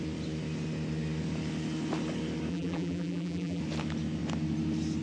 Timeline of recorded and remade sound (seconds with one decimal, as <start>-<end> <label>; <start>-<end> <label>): 0.0-2.5 recorded; 2.5-3.6 remade; 3.6-5.0 recorded